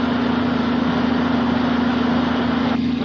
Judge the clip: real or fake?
real